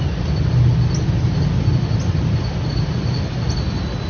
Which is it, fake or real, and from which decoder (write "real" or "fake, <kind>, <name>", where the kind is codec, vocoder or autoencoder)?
real